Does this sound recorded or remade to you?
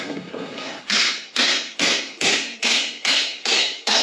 remade